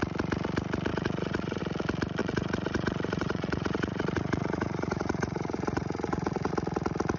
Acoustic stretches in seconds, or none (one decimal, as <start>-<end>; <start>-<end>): 0.0-0.9; 1.6-2.2; 6.5-7.2